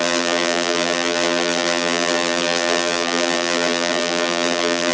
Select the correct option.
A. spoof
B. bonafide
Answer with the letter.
A